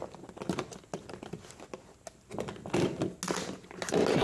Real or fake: real